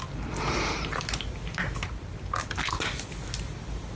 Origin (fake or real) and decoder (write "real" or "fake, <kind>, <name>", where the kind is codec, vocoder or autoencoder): real